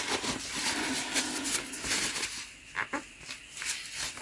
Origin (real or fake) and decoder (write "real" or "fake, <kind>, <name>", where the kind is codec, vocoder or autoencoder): real